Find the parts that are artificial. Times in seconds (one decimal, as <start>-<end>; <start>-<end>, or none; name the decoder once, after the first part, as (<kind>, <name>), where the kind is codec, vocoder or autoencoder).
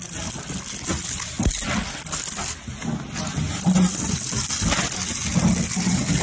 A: none